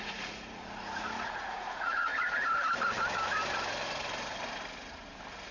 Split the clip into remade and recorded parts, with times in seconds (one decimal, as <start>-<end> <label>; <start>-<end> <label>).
0.0-2.1 remade; 2.1-5.5 recorded